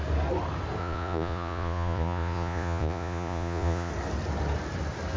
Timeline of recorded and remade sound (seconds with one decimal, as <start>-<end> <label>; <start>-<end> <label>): 0.0-0.8 recorded; 0.8-3.9 remade; 3.9-5.2 recorded